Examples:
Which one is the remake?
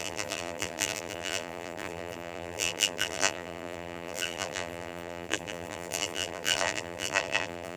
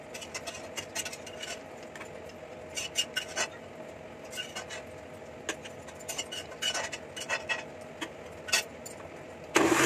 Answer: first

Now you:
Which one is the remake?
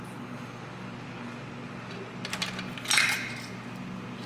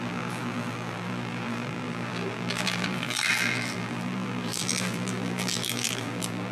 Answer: second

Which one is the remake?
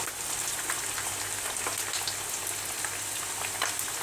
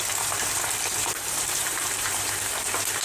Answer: second